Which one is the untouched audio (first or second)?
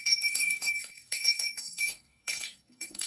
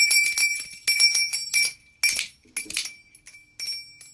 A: second